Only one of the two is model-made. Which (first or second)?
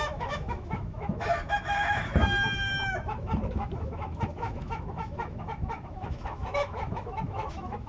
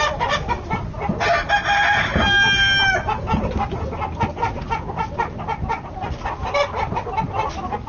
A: first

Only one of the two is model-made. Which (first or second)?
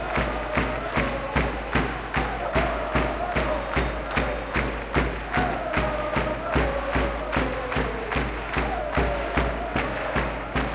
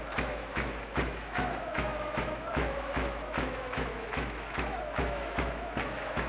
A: second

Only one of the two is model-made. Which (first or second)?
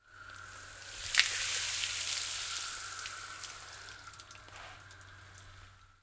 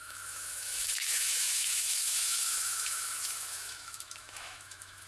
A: second